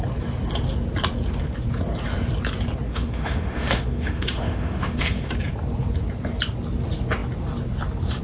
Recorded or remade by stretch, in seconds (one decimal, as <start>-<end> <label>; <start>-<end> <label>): 0.0-2.9 recorded; 2.9-5.3 remade; 5.3-8.2 recorded